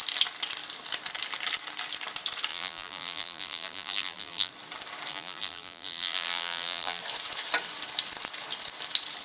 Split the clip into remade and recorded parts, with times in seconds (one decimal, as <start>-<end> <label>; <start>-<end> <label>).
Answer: 0.0-2.5 recorded; 2.5-4.5 remade; 4.5-5.1 recorded; 5.1-7.0 remade; 7.0-9.2 recorded